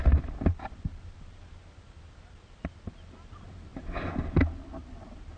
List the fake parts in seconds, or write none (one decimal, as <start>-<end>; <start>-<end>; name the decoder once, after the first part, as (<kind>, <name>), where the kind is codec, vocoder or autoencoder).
3.7-4.4 (vocoder, BigVGAN v2)